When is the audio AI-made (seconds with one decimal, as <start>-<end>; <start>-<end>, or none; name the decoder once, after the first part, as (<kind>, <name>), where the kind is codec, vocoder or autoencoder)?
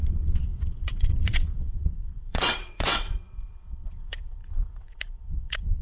0.0-5.8 (vocoder, WaveNeXt)